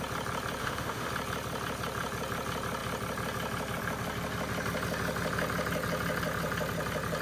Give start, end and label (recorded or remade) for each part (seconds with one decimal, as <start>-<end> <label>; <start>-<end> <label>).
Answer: 0.0-0.6 recorded; 0.6-1.1 remade; 1.1-7.2 recorded